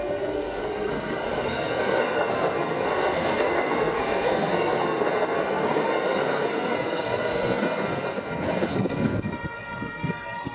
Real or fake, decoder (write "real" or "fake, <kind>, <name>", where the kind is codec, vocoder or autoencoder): fake, codec, SNAC